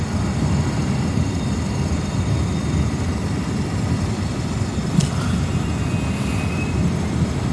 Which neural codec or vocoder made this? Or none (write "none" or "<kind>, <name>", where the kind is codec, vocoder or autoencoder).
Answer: none